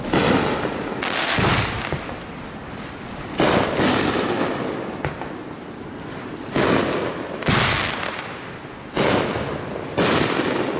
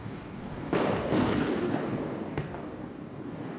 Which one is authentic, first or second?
first